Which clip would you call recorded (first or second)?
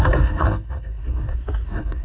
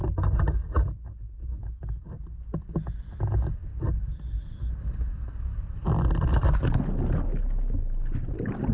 second